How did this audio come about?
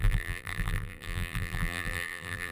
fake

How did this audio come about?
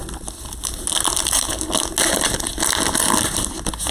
real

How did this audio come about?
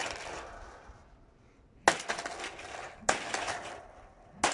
real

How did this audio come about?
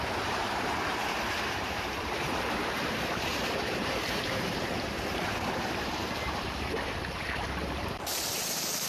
fake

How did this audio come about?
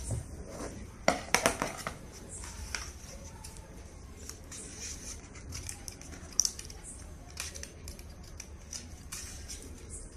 fake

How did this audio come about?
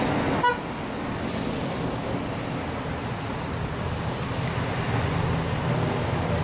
real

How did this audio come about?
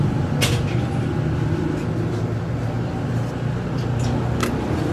real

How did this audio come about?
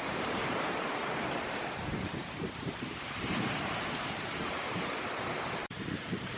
fake